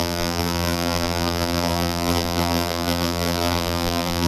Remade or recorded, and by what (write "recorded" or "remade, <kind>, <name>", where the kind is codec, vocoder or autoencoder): remade, vocoder, BigVGAN v2